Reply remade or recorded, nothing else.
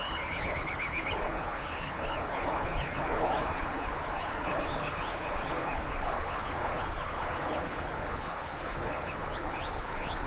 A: remade